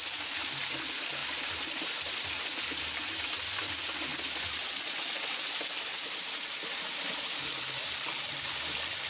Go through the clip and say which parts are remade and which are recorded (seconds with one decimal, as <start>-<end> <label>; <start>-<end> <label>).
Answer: 0.0-9.1 recorded